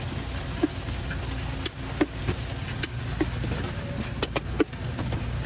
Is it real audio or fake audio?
real